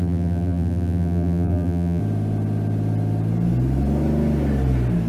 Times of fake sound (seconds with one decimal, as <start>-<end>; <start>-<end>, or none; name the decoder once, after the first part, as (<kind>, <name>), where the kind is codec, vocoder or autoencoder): 0.0-2.0 (vocoder, BigVGAN v2)